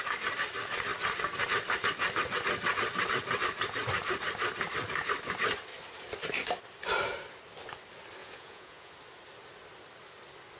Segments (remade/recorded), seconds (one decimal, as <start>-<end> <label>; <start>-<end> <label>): 0.0-8.2 recorded; 8.2-8.9 remade; 8.9-10.6 recorded